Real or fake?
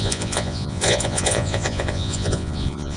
fake